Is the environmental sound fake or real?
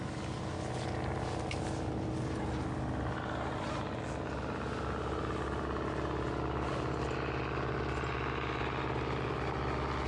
real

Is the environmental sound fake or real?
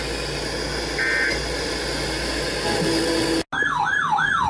real